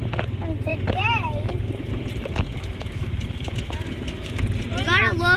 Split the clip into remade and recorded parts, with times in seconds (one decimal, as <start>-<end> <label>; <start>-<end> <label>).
0.0-0.7 recorded; 0.7-1.9 remade; 1.9-2.5 recorded; 2.5-4.4 remade; 4.4-5.4 recorded